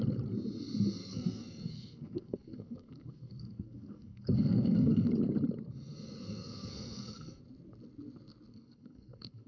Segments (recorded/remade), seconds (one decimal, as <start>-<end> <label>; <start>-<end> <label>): 0.0-1.0 recorded; 1.0-5.1 remade; 5.1-6.2 recorded; 6.2-7.4 remade; 7.4-8.5 recorded; 8.5-9.5 remade